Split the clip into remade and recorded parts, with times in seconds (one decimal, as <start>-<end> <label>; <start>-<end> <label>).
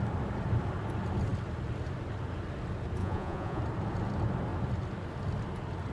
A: 0.0-3.0 recorded; 3.0-3.6 remade; 3.6-5.9 recorded